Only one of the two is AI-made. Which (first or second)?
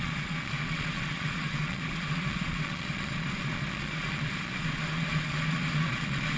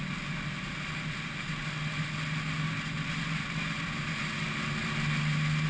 first